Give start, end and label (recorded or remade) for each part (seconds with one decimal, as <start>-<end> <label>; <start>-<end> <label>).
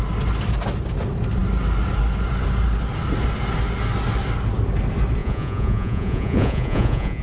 0.0-5.2 recorded; 5.2-7.2 remade